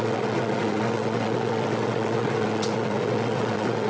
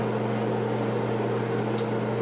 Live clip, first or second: second